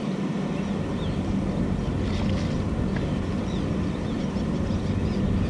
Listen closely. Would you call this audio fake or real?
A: real